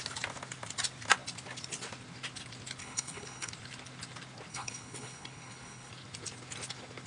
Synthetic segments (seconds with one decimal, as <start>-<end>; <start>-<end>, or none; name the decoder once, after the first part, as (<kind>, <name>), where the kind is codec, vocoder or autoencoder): 2.8-3.5 (codec, HILCodec); 4.5-5.9